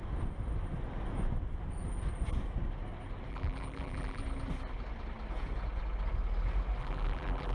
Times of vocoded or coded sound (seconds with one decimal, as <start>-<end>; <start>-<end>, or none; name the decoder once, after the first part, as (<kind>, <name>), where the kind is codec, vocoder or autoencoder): 3.3-4.2 (vocoder, BigVGAN v2); 6.8-7.5